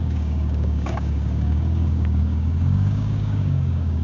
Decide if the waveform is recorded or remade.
remade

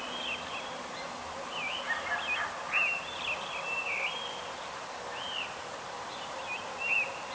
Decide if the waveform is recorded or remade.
recorded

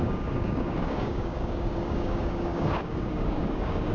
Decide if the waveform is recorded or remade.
remade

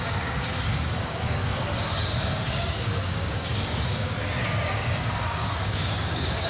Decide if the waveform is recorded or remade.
remade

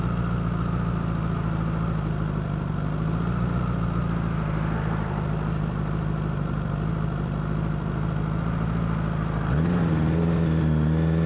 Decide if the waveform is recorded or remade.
recorded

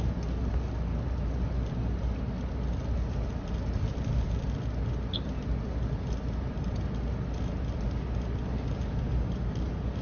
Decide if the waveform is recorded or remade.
recorded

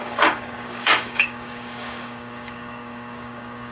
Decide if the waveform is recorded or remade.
remade